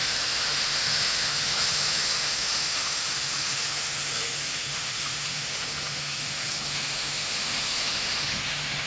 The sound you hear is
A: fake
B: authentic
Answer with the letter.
A